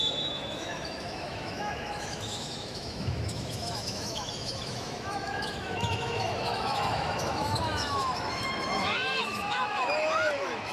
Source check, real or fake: fake